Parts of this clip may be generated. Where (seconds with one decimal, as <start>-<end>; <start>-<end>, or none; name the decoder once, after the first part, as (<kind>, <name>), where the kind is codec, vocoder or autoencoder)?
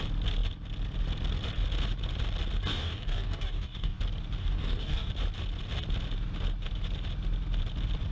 2.7-4.0 (codec, DAC); 4.4-5.1